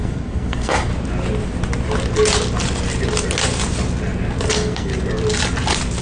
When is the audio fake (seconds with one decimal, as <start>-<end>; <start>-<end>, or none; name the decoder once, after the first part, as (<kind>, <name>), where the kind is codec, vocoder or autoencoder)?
0.0-0.9 (codec, SNAC); 4.5-4.9